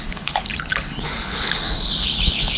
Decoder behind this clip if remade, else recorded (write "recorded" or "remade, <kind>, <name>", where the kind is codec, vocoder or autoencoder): remade, codec, HILCodec